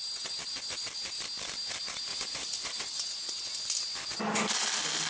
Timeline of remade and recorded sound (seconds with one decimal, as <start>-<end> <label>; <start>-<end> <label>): 0.0-2.1 recorded; 2.1-3.0 remade; 3.0-5.1 recorded